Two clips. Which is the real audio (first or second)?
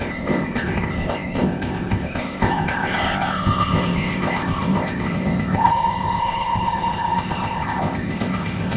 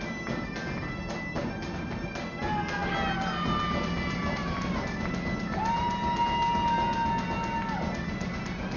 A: second